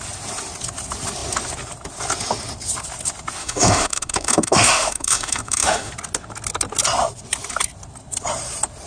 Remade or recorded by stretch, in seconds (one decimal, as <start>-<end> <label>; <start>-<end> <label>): 0.0-3.4 recorded; 3.4-5.9 remade; 5.9-8.9 recorded

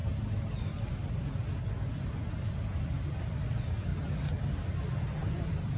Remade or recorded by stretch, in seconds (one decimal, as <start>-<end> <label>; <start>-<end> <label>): 0.0-3.9 recorded; 3.9-4.6 remade; 4.6-5.2 recorded; 5.2-5.8 remade

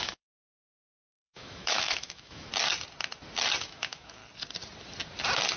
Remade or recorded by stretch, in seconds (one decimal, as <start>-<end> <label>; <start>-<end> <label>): 0.0-2.5 remade; 2.5-3.6 recorded; 3.6-4.2 remade; 4.2-5.6 recorded

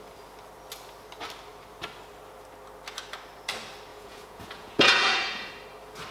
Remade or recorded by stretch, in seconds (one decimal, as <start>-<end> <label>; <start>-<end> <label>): 0.0-3.9 recorded; 3.9-5.5 remade; 5.5-6.1 recorded

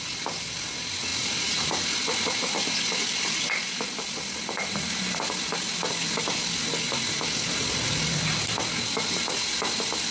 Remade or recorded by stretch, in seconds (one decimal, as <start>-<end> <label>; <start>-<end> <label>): 0.0-1.1 recorded; 1.1-6.2 remade; 6.2-10.1 recorded

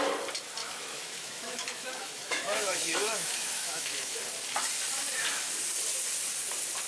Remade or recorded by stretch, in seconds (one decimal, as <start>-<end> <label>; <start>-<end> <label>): 0.0-0.6 recorded; 0.6-4.2 remade; 4.2-6.9 recorded